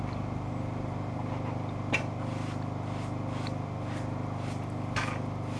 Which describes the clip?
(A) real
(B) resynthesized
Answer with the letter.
A